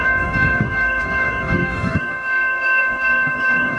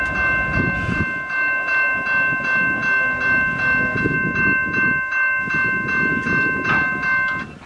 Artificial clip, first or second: first